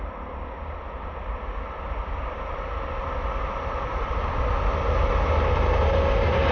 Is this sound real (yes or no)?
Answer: yes